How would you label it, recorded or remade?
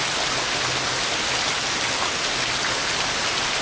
recorded